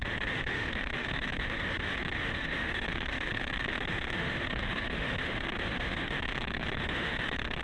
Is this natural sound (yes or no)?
no